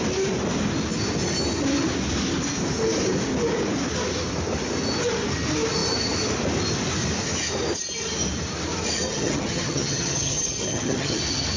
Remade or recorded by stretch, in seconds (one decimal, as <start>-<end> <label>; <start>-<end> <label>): 0.0-9.1 recorded; 9.1-11.2 remade; 11.2-11.6 recorded